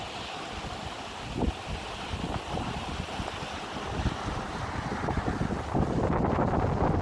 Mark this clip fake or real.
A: real